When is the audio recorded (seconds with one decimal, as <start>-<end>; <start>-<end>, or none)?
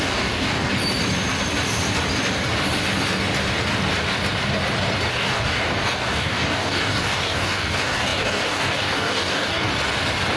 0.7-5.1; 9.7-10.4